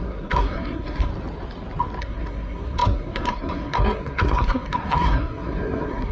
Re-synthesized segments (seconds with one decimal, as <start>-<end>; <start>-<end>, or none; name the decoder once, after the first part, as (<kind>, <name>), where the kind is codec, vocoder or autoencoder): 0.0-1.1 (codec, SNAC); 2.0-6.1